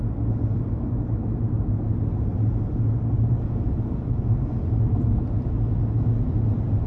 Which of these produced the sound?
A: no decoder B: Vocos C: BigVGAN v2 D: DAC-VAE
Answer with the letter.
A